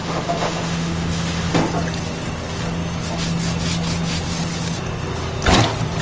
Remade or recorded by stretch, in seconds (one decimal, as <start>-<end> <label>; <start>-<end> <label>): 0.0-1.5 remade; 1.5-6.0 recorded